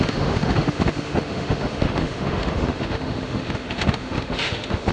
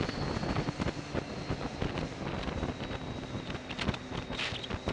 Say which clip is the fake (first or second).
first